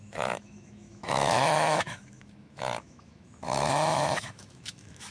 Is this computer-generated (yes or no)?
yes